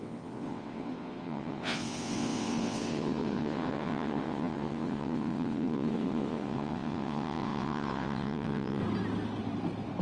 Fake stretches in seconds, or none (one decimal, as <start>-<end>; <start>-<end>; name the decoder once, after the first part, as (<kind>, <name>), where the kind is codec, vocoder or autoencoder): 0.0-8.8 (vocoder, WaveNeXt)